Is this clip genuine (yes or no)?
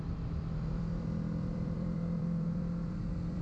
no